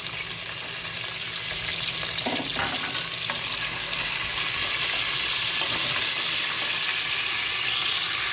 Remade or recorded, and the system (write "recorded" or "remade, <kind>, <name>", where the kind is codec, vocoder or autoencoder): recorded